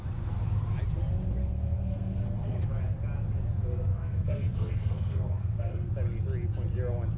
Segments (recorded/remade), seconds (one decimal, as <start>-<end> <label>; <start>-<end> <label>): 0.0-1.4 recorded; 1.4-2.7 remade; 2.7-3.9 recorded; 3.9-5.9 remade; 5.9-7.2 recorded